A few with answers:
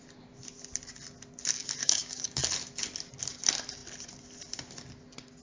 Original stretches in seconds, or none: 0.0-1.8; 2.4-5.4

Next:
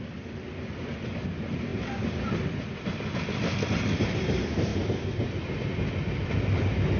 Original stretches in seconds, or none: 0.0-7.0

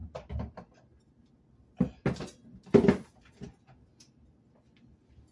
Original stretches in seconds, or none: 0.0-5.3

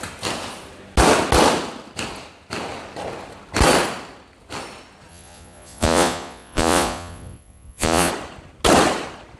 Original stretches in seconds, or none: 0.0-5.1; 8.1-9.4

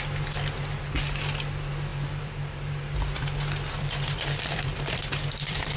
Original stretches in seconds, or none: 0.0-1.9

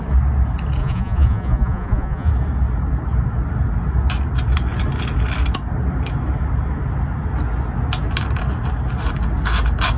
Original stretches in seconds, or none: 0.0-0.8; 2.3-10.0

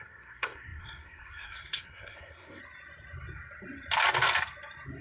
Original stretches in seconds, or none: 2.6-5.0